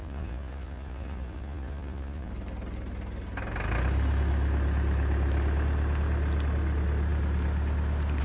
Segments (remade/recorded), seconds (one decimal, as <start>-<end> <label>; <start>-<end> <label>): 0.0-2.3 remade; 2.3-8.2 recorded